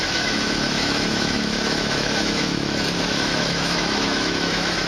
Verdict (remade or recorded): remade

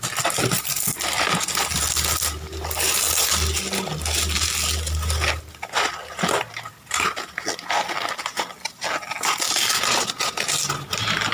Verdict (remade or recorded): recorded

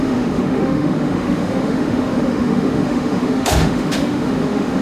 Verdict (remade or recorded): remade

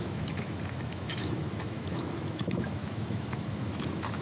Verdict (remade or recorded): remade